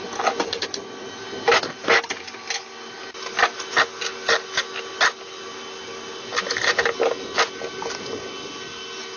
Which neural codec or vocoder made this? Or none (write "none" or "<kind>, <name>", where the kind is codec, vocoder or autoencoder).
none